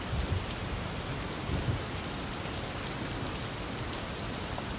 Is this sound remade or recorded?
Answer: recorded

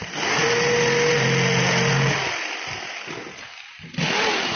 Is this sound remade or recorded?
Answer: recorded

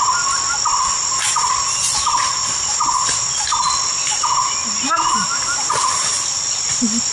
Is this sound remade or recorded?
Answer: recorded